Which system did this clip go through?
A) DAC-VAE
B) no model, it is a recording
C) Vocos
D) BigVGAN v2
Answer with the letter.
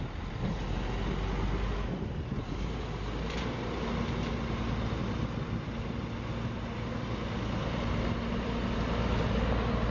B